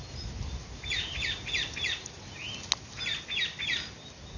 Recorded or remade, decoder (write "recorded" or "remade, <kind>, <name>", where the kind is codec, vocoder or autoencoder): recorded